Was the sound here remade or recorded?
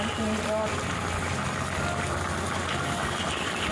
recorded